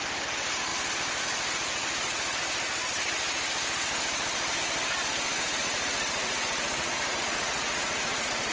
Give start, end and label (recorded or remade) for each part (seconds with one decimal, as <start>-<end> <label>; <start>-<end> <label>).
0.0-5.6 recorded; 5.6-8.5 remade